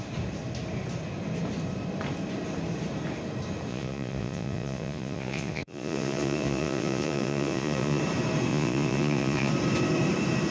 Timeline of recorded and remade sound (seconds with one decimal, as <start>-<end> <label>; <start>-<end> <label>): 0.0-3.7 recorded; 3.7-8.0 remade; 8.0-8.5 recorded; 8.5-9.5 remade; 9.5-10.5 recorded